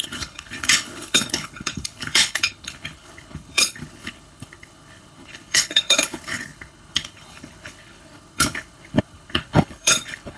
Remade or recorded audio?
remade